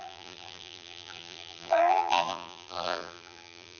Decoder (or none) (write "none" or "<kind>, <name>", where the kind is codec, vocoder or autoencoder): vocoder, BigVGAN v2